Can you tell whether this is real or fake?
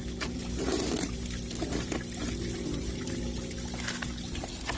real